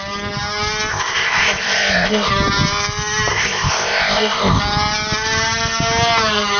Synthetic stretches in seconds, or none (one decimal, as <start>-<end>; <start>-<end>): 0.9-2.3; 3.3-4.6